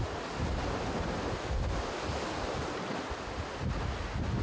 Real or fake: real